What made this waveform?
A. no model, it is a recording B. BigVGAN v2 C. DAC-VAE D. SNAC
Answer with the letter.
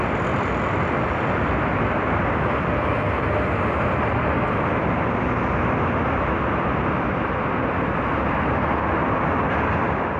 A